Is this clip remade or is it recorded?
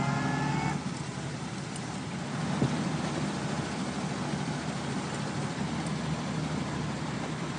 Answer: recorded